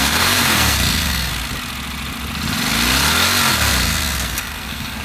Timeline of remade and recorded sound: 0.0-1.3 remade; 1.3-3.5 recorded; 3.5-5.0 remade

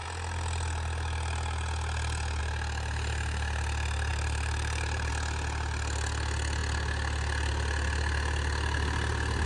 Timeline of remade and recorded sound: 0.0-4.1 recorded; 4.1-5.1 remade; 5.1-9.5 recorded

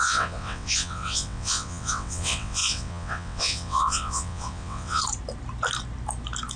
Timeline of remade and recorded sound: 0.0-5.0 remade; 5.0-6.6 recorded

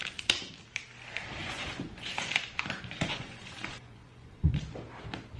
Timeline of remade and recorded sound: 0.0-1.4 recorded; 1.4-4.6 remade; 4.6-5.4 recorded